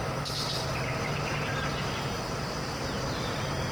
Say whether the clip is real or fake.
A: real